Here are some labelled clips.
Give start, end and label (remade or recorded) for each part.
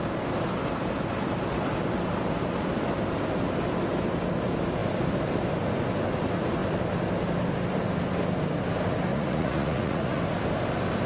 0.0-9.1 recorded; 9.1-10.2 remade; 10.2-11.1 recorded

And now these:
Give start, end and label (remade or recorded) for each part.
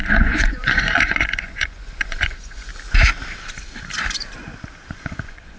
0.0-2.7 remade; 2.7-4.9 recorded; 4.9-5.6 remade